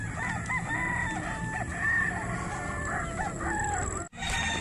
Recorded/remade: recorded